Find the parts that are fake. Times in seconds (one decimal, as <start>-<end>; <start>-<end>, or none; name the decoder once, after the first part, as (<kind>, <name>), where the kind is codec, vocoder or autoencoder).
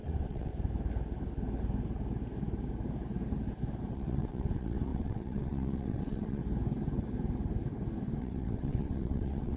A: 0.0-0.5 (vocoder, WaveNeXt); 3.9-6.4; 8.2-9.6